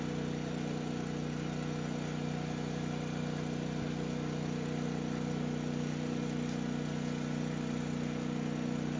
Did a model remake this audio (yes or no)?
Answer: no